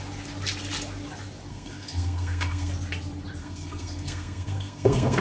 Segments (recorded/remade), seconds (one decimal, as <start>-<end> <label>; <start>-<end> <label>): 0.0-1.5 recorded; 1.5-2.7 remade; 2.7-3.4 recorded; 3.4-5.2 remade